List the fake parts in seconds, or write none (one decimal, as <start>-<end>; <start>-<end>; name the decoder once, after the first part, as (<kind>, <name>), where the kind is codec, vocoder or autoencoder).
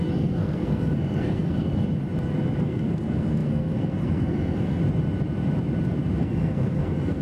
0.0-1.8 (codec, SNAC); 2.6-4.8; 6.2-7.2